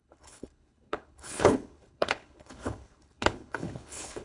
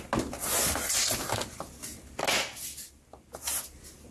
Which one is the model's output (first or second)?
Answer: first